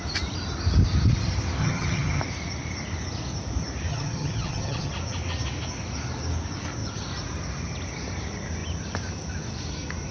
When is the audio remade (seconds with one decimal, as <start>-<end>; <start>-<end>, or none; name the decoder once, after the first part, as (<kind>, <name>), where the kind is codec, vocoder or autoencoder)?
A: 1.6-2.2 (vocoder, HiFi-GAN); 3.9-4.9